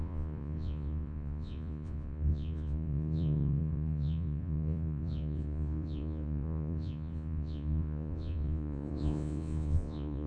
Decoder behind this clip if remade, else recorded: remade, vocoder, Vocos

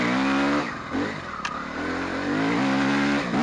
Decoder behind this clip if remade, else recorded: recorded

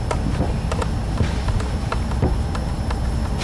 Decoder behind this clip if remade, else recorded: recorded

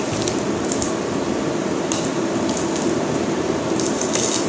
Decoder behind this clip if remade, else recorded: recorded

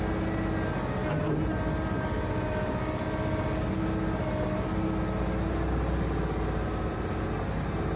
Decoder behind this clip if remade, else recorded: recorded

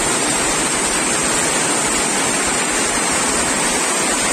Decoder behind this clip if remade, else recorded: recorded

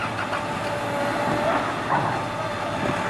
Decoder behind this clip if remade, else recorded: recorded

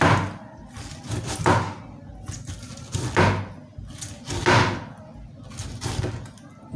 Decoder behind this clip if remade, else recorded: recorded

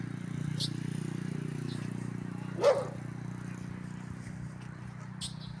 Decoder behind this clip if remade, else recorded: recorded